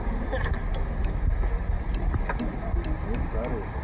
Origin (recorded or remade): recorded